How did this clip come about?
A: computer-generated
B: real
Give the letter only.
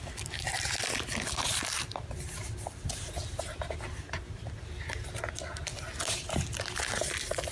B